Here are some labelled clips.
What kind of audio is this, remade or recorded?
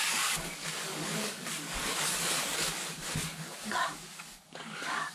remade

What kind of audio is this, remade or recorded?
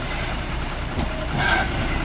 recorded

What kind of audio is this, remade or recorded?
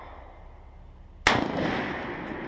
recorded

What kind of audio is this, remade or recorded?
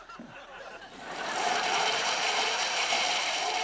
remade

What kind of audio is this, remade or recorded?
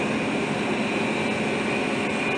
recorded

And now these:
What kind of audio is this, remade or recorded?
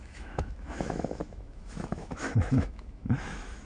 remade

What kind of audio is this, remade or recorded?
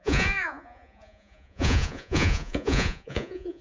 remade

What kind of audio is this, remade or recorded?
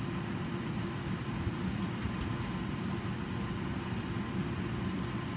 recorded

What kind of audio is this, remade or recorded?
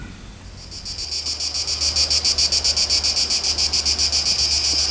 recorded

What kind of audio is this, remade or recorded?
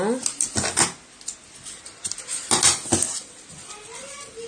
recorded